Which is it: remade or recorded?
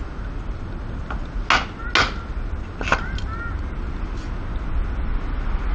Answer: recorded